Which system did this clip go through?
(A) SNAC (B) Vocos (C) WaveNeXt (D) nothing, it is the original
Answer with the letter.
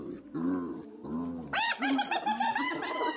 D